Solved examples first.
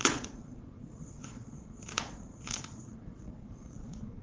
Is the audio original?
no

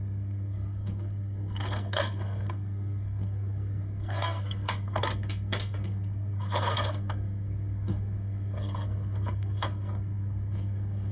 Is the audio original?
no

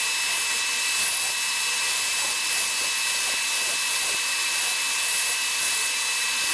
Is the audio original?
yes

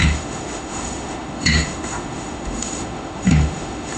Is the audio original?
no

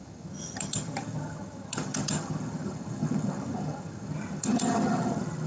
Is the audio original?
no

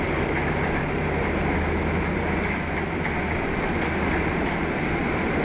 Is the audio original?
yes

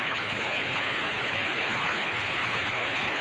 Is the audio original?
no